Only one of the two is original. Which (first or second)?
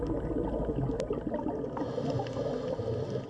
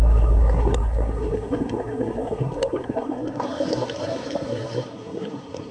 first